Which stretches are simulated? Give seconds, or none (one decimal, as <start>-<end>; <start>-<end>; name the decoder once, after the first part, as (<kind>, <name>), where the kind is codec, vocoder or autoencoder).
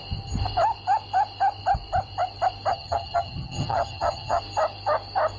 2.7-4.4 (vocoder, HiFi-GAN)